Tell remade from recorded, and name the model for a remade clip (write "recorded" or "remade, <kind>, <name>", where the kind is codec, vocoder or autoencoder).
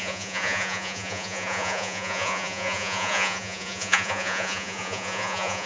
remade, vocoder, Vocos